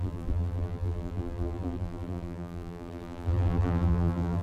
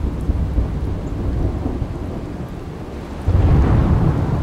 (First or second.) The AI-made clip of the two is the first